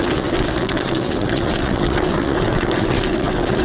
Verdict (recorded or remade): remade